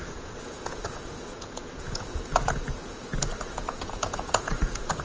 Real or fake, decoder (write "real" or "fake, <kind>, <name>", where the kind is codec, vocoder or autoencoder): fake, vocoder, Vocos